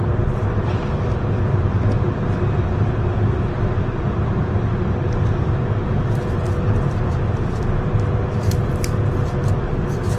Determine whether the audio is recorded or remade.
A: recorded